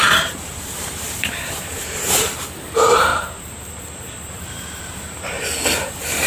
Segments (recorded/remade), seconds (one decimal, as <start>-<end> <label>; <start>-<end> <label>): 0.0-6.3 remade